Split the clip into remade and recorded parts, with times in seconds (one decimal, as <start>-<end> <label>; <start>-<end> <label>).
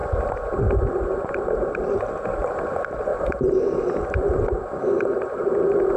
0.0-3.1 recorded; 3.1-3.6 remade; 3.6-6.0 recorded